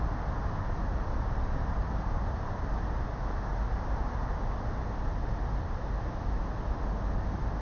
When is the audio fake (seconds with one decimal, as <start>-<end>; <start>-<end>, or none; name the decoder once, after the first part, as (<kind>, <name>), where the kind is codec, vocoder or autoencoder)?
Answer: none